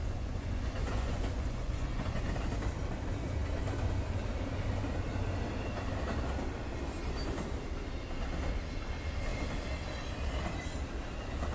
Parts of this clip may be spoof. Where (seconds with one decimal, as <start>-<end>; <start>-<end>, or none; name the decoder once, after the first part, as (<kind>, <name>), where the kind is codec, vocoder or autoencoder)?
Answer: 0.0-2.2 (vocoder, Vocos)